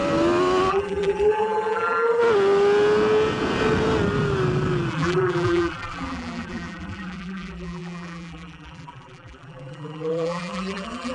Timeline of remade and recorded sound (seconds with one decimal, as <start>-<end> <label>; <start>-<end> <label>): 0.0-0.7 recorded; 0.7-2.2 remade; 2.2-4.9 recorded; 4.9-11.1 remade

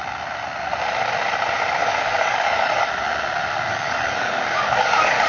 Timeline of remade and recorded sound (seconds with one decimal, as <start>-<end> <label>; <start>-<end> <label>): 0.0-1.8 recorded; 1.8-2.9 remade; 2.9-3.7 recorded; 3.7-5.3 remade

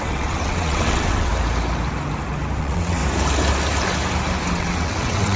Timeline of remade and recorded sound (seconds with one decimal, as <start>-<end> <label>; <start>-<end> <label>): 0.0-1.3 remade; 1.3-2.6 recorded; 2.6-3.0 remade; 3.0-4.5 recorded; 4.5-5.4 remade

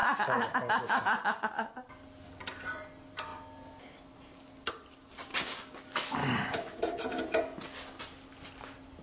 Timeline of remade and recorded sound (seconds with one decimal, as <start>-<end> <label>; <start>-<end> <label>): 0.0-1.5 remade; 1.5-5.3 recorded; 5.3-5.8 remade; 5.8-6.2 recorded; 6.2-6.8 remade; 6.8-9.0 recorded

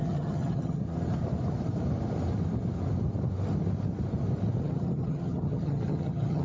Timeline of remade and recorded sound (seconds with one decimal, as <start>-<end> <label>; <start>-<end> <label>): 0.0-0.8 remade; 0.8-4.6 recorded; 4.6-6.4 remade